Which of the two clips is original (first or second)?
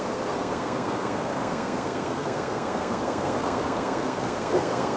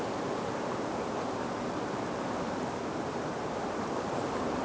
second